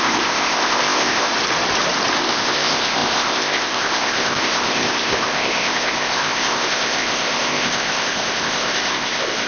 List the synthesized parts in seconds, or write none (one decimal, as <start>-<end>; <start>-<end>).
0.0-1.3; 2.2-9.5